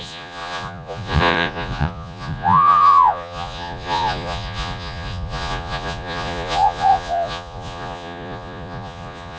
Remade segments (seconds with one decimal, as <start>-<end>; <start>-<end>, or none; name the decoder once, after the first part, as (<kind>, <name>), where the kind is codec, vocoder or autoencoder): 0.0-9.4 (vocoder, Vocos)